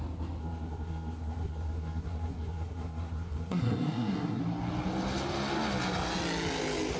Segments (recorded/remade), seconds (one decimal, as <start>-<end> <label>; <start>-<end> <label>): 0.0-0.4 recorded; 0.4-4.4 remade; 4.4-7.0 recorded